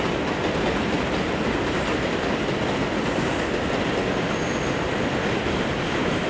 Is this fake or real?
real